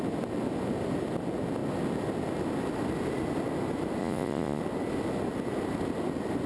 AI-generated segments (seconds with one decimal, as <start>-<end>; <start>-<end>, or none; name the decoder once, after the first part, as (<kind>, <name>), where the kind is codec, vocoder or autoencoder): 4.0-4.6 (vocoder, Vocos)